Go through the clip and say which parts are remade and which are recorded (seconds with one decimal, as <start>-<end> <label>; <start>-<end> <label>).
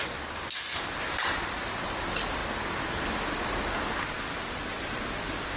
0.0-5.6 recorded